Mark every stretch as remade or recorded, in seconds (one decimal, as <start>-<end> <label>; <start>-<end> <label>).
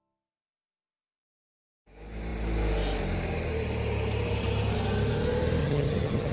0.0-5.6 recorded; 5.6-6.3 remade